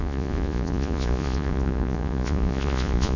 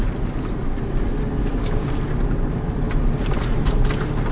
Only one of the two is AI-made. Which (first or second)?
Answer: first